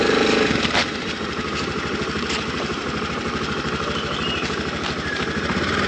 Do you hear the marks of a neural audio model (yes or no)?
yes